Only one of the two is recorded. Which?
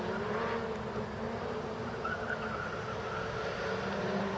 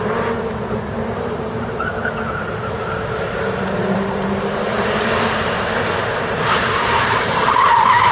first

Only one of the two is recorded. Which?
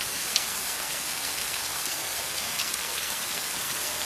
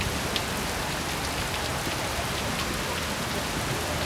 second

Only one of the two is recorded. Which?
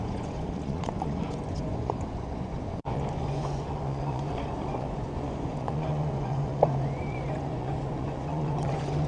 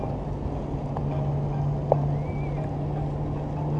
second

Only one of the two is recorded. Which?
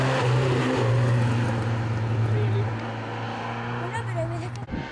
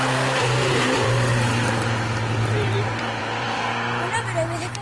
first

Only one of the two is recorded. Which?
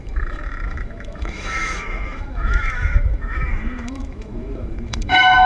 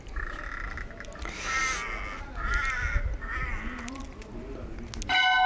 second